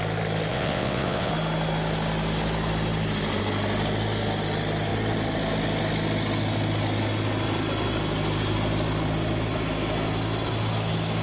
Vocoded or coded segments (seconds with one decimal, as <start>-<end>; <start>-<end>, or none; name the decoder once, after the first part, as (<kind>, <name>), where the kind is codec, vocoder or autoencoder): 0.5-1.3 (vocoder, WaveNeXt)